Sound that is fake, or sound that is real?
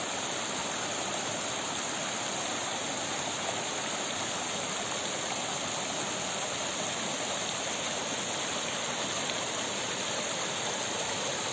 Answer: real